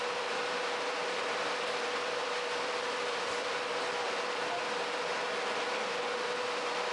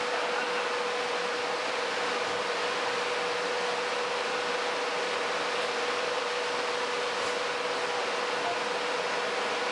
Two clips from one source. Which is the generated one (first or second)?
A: first